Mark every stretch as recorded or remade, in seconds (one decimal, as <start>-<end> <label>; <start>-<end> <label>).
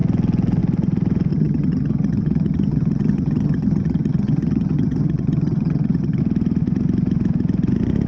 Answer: 0.0-1.3 recorded; 1.3-6.2 remade; 6.2-8.1 recorded